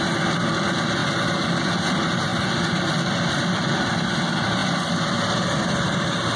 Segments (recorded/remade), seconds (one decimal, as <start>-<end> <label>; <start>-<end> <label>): 0.0-2.3 recorded; 2.3-4.1 remade; 4.1-4.6 recorded; 4.6-5.6 remade; 5.6-6.4 recorded